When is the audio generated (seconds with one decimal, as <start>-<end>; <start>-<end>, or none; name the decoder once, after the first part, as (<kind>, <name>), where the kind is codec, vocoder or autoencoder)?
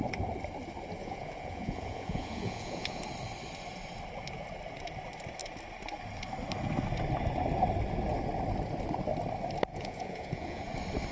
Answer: 1.0-3.0 (vocoder, Vocos); 9.7-10.6